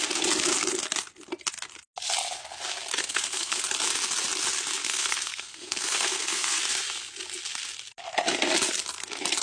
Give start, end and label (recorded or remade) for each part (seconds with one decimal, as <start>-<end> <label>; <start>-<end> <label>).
0.0-3.0 recorded; 3.0-3.6 remade; 3.6-4.8 recorded; 4.8-6.6 remade; 6.6-9.4 recorded

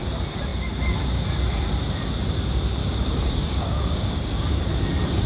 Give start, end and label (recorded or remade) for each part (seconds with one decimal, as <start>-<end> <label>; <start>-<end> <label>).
0.0-2.8 recorded; 2.8-4.7 remade; 4.7-5.3 recorded